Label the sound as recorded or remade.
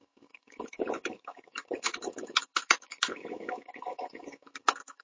remade